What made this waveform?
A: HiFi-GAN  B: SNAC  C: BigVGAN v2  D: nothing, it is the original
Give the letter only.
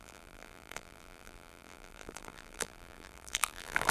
C